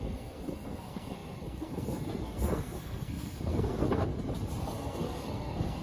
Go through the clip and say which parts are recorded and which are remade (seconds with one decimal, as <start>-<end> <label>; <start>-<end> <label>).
0.0-4.1 remade; 4.1-4.6 recorded; 4.6-5.8 remade